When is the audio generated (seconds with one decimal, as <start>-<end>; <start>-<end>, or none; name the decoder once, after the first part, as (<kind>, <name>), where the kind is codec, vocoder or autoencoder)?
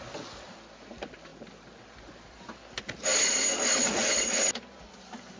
none